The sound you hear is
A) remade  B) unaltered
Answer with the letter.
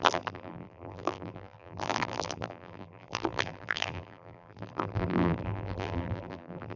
A